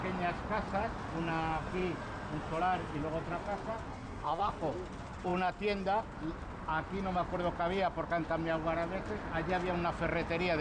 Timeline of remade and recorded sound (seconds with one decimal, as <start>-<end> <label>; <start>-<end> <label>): 0.0-3.9 recorded; 3.9-4.5 remade; 4.5-10.6 recorded